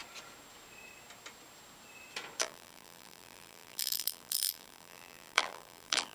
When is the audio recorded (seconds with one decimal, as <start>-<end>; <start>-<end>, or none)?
0.0-2.4